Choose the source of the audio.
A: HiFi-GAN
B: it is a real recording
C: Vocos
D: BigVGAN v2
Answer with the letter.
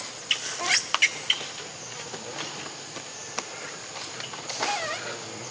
B